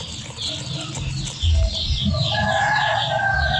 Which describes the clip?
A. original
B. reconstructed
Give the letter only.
A